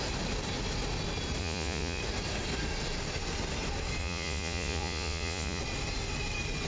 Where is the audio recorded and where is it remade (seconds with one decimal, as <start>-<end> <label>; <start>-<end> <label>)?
0.0-1.4 recorded; 1.4-2.0 remade; 2.0-4.0 recorded; 4.0-5.6 remade; 5.6-6.7 recorded